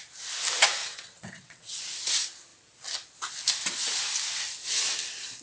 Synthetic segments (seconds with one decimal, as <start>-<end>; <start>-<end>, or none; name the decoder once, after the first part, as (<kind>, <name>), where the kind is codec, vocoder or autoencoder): 0.8-1.8 (vocoder, WaveNeXt)

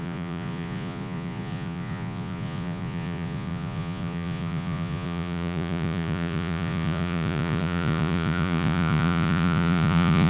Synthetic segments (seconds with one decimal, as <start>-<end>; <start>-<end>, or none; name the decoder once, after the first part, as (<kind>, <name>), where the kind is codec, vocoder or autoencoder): 0.0-10.3 (vocoder, Vocos)

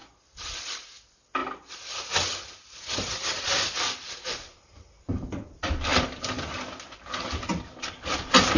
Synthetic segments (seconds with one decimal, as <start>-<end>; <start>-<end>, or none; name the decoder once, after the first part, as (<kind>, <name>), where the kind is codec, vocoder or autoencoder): 0.0-1.4 (vocoder, BigVGAN v2); 4.1-5.9

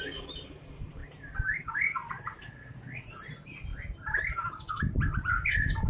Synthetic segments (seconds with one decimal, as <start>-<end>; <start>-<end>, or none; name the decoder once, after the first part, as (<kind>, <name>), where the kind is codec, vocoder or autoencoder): none

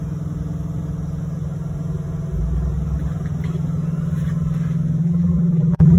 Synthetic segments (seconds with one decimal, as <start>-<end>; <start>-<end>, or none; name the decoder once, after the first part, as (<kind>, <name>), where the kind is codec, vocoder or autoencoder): 5.0-6.0 (vocoder, BigVGAN v2)

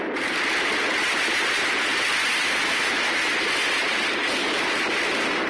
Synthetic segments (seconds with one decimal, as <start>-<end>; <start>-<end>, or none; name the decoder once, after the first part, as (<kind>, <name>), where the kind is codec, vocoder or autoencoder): none